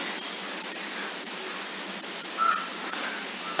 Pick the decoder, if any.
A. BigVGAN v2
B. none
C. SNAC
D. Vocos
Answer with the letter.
B